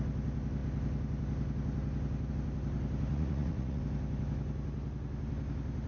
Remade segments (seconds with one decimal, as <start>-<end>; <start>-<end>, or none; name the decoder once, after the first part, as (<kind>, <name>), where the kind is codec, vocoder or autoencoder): 3.1-3.8 (vocoder, Vocos)